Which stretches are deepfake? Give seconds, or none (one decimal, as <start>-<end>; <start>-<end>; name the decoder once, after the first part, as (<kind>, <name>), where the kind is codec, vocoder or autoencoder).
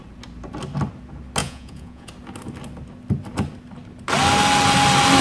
1.4-2.1 (vocoder, Vocos)